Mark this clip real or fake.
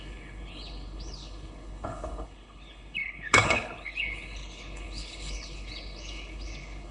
fake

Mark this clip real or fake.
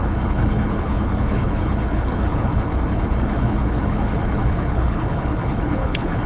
fake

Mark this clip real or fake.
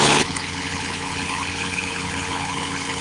fake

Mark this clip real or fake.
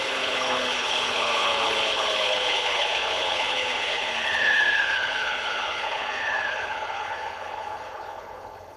fake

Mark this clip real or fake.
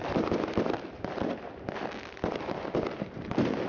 real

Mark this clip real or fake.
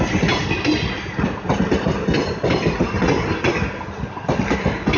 real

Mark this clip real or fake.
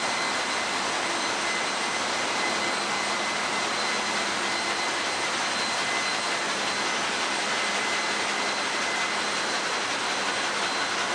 real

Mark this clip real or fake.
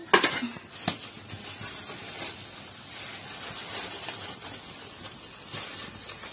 real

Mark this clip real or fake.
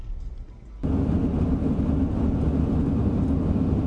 real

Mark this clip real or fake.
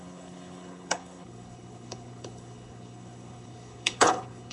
fake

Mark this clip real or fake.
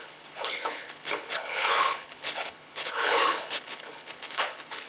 fake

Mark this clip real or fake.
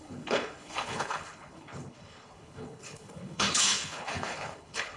fake